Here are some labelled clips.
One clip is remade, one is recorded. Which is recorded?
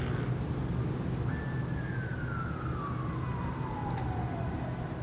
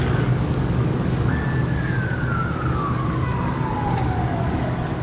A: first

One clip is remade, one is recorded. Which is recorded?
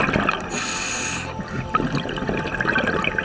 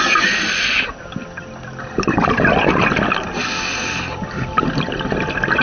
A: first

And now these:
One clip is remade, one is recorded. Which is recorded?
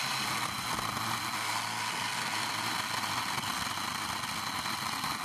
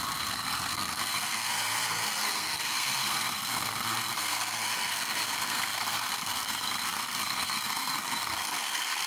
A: first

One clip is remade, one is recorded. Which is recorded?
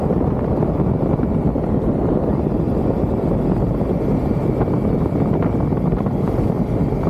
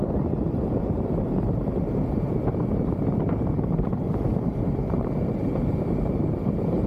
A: first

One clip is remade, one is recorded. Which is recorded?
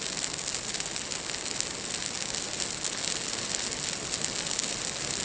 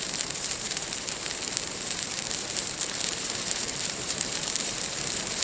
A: first